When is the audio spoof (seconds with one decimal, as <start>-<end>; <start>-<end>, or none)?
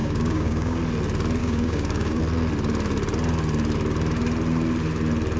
0.0-0.8; 1.4-2.2